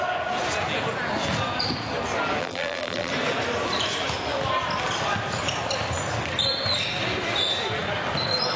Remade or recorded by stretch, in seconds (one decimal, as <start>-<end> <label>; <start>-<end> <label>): 0.0-2.4 recorded; 2.4-3.1 remade; 3.1-8.6 recorded